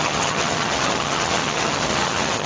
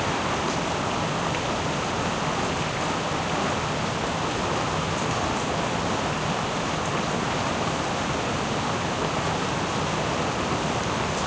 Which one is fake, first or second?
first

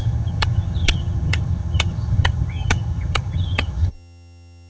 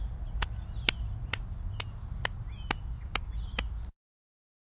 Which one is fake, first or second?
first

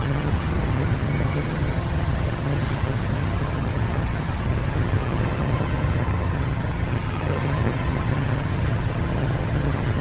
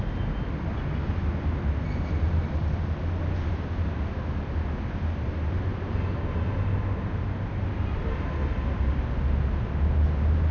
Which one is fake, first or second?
first